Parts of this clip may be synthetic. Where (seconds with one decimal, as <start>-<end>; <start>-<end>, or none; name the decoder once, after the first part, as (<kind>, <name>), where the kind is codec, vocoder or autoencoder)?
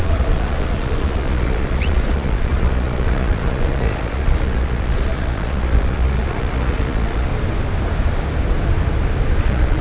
0.0-7.3 (vocoder, Vocos); 9.4-9.8